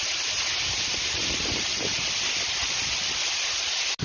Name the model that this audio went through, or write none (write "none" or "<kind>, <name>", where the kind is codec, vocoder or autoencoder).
none